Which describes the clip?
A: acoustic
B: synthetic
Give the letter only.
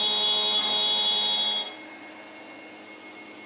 A